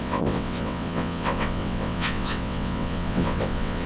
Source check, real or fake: fake